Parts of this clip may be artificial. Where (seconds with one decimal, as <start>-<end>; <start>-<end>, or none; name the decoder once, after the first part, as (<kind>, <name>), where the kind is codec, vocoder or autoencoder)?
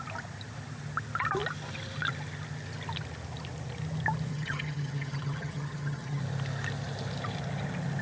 4.3-6.2 (vocoder, HiFi-GAN)